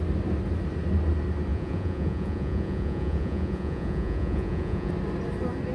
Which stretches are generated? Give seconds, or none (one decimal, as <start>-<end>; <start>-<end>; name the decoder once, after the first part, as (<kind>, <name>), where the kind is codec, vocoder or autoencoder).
1.5-4.9 (vocoder, Vocos)